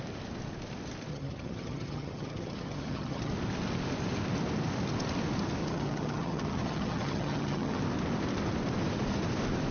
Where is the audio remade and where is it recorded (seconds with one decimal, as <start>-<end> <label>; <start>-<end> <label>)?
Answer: 0.0-1.1 recorded; 1.1-3.3 remade; 3.3-5.6 recorded; 5.6-7.8 remade; 7.8-9.7 recorded